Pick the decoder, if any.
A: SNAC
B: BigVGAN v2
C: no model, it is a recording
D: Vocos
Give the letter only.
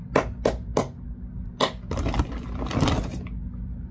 C